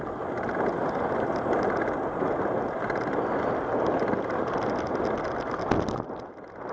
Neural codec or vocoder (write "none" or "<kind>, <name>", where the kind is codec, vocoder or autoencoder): none